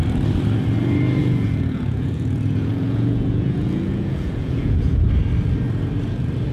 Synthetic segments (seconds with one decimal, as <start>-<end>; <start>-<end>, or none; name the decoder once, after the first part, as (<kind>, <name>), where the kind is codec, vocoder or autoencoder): 1.2-5.1 (vocoder, Vocos)